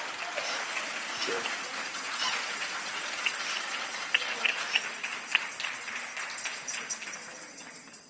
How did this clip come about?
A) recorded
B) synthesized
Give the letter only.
B